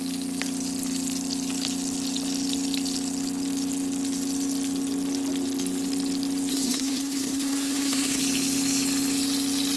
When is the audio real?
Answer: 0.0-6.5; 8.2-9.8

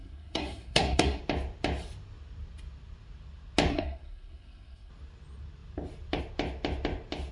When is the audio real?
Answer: 1.2-3.7; 4.9-7.3

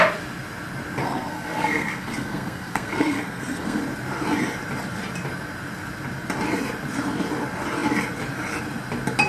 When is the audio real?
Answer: 0.0-1.0; 3.8-9.3

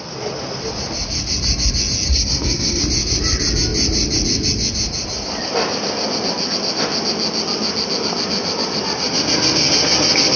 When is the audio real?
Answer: 0.0-2.1; 2.8-10.4